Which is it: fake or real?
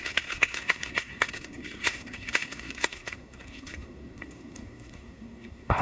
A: fake